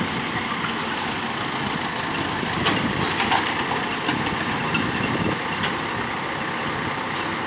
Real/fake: real